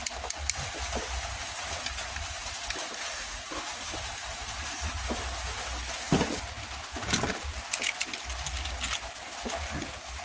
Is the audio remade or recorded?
recorded